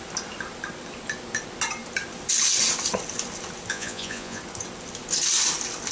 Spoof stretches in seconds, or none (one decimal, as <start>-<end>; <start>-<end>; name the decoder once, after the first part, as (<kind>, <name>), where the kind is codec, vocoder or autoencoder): 3.7-4.4 (vocoder, Vocos)